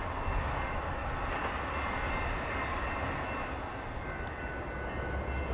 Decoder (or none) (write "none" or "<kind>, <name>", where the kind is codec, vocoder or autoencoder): none